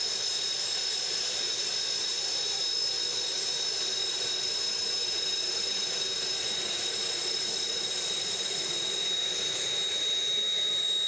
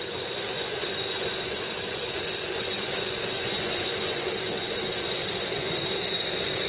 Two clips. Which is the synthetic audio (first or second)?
second